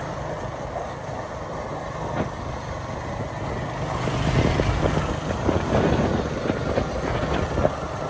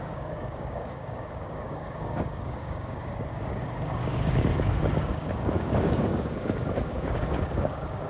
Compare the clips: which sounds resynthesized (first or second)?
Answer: second